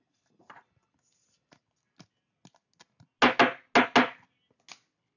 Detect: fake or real real